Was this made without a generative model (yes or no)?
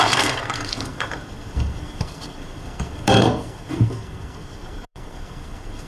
no